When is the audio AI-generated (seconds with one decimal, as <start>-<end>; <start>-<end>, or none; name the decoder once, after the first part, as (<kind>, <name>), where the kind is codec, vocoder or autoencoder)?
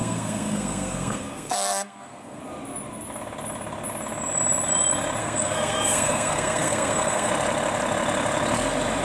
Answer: 0.0-2.4 (codec, SNAC); 5.2-7.3